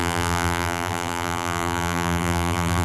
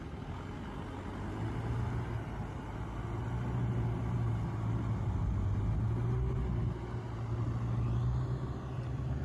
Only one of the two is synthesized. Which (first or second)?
first